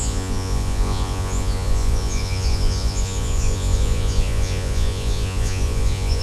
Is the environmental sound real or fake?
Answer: fake